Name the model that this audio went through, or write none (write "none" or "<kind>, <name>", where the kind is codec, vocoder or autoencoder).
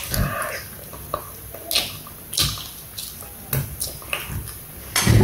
none